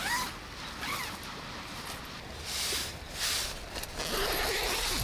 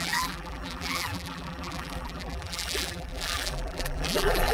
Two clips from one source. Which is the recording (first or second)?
first